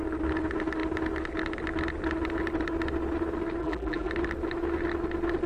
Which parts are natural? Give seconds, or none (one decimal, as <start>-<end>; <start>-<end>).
0.0-3.6; 4.1-5.5